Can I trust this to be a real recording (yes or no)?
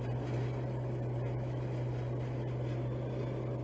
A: yes